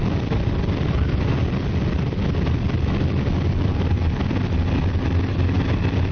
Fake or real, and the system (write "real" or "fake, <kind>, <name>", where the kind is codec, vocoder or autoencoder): real